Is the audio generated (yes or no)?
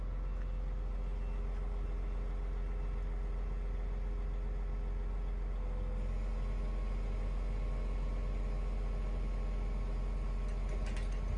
no